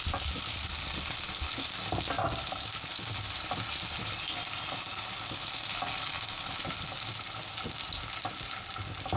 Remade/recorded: recorded